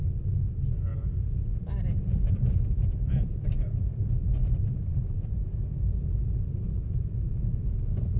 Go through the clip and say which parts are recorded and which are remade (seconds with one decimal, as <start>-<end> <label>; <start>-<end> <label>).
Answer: 0.0-0.9 recorded; 0.9-4.0 remade; 4.0-4.4 recorded; 4.4-8.2 remade